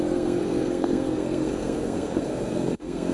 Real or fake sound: fake